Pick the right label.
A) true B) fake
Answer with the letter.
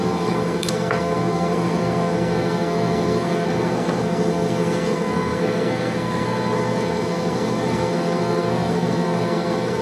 B